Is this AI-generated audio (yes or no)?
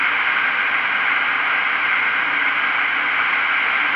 no